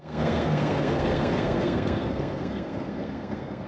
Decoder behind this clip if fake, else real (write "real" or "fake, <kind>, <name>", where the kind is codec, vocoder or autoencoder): fake, codec, SNAC